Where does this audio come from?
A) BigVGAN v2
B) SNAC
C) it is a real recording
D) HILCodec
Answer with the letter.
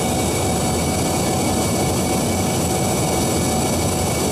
C